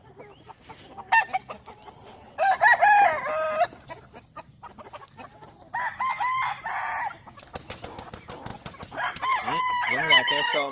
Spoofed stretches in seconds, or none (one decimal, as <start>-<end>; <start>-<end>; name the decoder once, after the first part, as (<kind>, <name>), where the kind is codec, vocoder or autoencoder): none